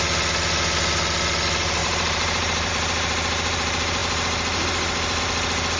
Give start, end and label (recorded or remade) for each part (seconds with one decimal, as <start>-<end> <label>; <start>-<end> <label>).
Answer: 0.0-1.8 recorded; 1.8-2.7 remade; 2.7-5.8 recorded